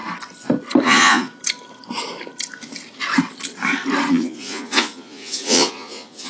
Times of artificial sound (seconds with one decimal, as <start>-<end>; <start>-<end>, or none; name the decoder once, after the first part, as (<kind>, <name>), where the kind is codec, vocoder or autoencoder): 0.8-1.3 (vocoder, Vocos); 4.1-6.3